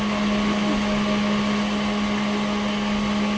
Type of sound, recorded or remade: recorded